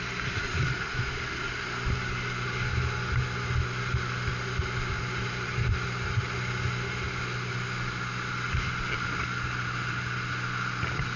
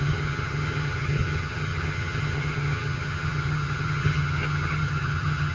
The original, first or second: first